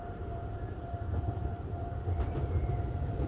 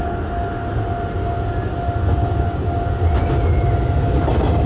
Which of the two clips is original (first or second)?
second